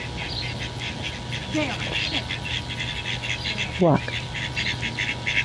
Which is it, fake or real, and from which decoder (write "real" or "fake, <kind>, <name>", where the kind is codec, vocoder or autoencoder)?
real